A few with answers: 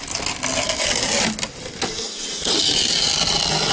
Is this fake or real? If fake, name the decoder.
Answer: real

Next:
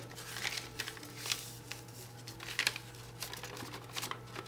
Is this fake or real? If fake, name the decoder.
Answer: real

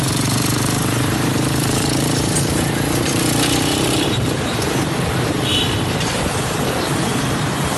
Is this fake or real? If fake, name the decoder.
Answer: fake, vocoder, BigVGAN v2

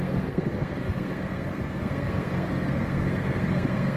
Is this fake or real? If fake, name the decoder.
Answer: fake, codec, SNAC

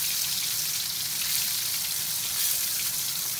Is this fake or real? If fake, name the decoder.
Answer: fake, vocoder, BigVGAN v2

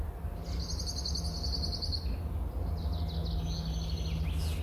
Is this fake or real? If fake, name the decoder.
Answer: real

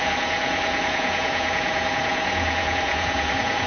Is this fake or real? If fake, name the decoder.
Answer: fake, vocoder, Vocos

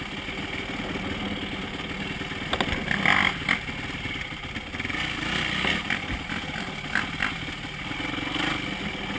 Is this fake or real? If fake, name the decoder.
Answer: real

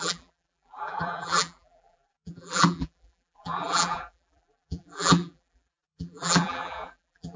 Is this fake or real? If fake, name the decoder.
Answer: fake, vocoder, BigVGAN v2